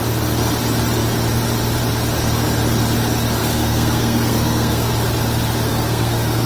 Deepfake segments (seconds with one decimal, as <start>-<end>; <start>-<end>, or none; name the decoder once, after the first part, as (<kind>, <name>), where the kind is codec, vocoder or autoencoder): 3.4-4.9 (codec, SNAC); 5.7-6.5